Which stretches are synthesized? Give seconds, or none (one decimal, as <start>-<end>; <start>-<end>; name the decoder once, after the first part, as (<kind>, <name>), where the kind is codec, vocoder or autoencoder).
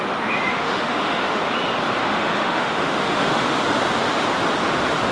0.5-1.4 (autoencoder, DAC-VAE); 2.1-3.6